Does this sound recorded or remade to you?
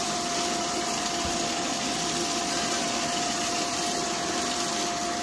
remade